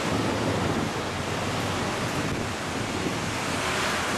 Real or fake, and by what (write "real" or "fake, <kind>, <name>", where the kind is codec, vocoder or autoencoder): real